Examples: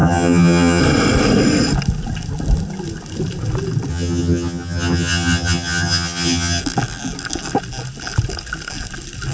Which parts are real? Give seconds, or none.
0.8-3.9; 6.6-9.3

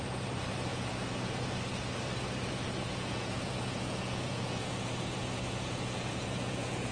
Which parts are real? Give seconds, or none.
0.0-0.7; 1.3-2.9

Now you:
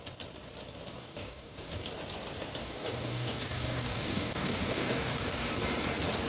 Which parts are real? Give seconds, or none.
0.0-1.0; 1.9-2.6; 5.5-6.3